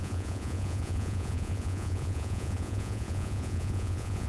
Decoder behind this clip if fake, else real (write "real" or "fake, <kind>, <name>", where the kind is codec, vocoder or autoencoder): fake, vocoder, Vocos